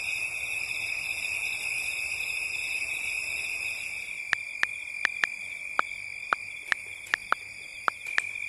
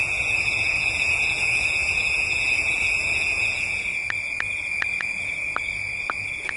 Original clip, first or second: first